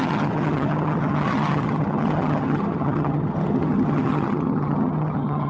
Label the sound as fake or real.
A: fake